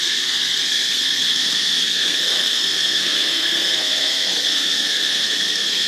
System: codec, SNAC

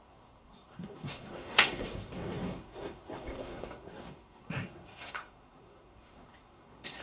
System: codec, SNAC